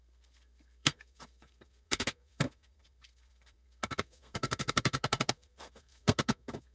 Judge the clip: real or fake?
fake